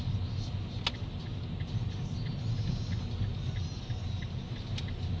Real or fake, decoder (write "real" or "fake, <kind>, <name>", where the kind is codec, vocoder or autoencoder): real